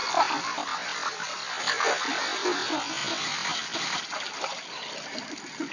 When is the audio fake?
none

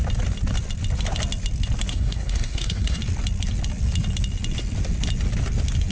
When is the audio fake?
1.9-3.0

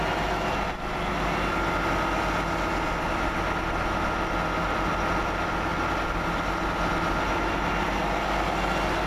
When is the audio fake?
none

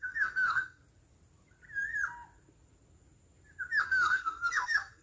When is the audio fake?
0.0-0.8; 3.8-5.0

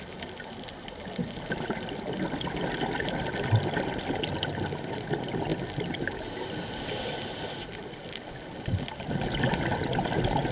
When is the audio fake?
none